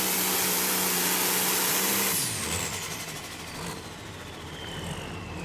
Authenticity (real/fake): real